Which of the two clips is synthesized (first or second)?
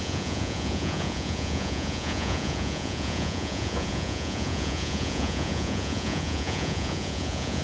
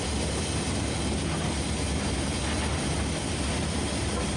first